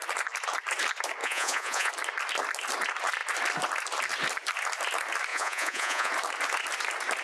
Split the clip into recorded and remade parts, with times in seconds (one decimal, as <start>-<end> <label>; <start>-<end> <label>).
0.0-1.2 recorded; 1.2-1.9 remade; 1.9-5.3 recorded; 5.3-6.1 remade; 6.1-7.2 recorded